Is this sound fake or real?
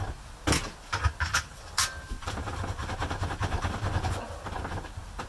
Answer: real